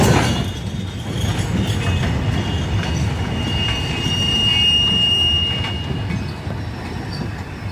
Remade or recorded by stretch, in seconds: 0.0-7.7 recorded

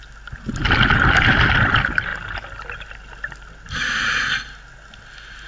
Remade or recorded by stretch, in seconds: 0.0-5.5 recorded

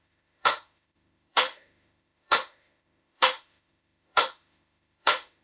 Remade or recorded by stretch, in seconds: 0.0-5.4 remade

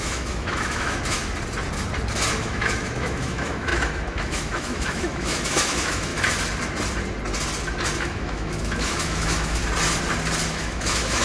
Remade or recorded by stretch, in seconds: 0.0-1.2 remade; 1.2-2.4 recorded; 2.4-6.1 remade; 6.1-8.0 recorded; 8.0-9.6 remade; 9.6-10.5 recorded; 10.5-11.2 remade

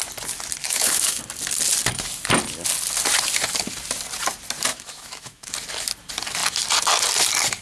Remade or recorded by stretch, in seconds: 0.0-0.6 recorded; 0.6-1.2 remade; 1.2-4.7 recorded; 4.7-5.5 remade; 5.5-7.6 recorded